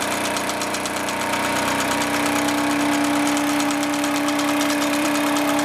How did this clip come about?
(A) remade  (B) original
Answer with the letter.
A